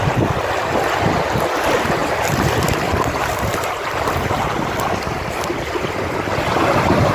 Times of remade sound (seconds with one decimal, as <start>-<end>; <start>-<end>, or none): 2.0-4.2